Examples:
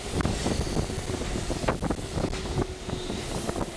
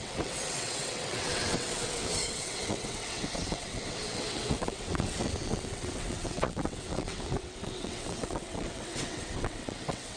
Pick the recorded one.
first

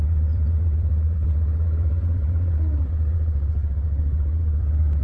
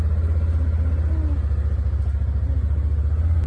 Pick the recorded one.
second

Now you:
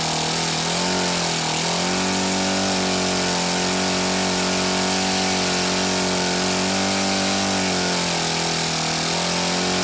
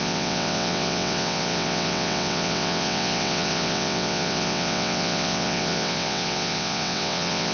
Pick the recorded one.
first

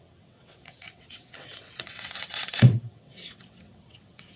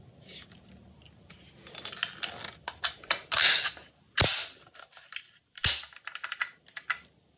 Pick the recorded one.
second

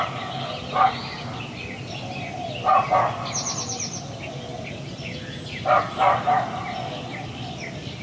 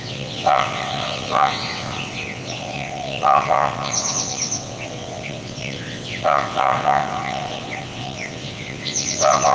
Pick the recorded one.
first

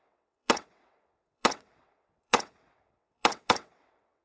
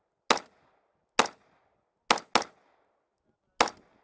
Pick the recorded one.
second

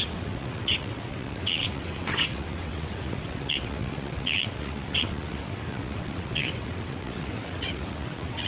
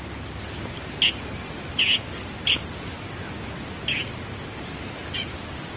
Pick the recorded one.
second